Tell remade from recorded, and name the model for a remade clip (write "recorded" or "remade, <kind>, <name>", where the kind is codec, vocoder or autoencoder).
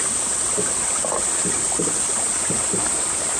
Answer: recorded